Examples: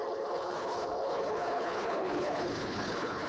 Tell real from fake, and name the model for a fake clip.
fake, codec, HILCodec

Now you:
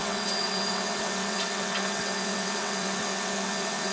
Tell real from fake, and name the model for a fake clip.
fake, vocoder, WaveNeXt